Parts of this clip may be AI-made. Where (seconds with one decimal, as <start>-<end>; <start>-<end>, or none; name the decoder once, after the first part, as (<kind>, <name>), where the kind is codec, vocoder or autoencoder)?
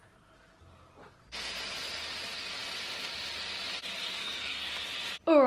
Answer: 4.2-4.7 (codec, SNAC)